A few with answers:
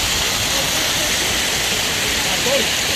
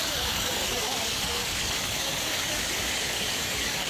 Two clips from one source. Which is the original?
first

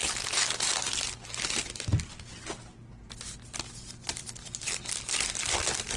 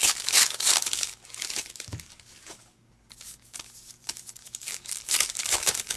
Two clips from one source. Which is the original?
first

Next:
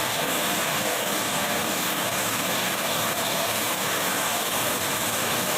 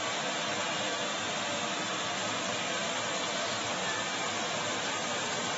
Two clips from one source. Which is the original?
second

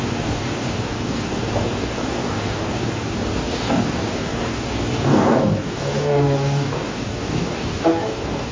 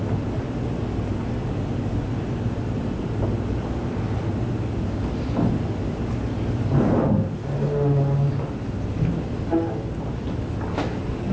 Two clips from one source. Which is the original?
second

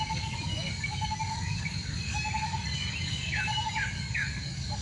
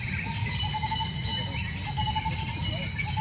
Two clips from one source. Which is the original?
second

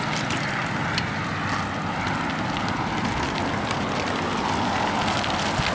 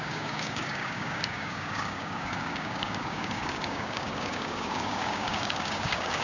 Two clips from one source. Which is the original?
first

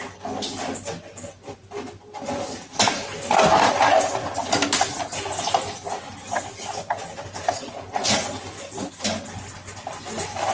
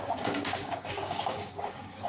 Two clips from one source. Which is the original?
first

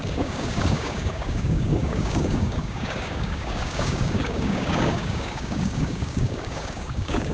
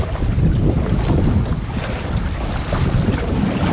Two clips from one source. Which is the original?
second